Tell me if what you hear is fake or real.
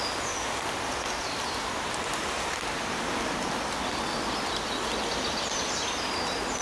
real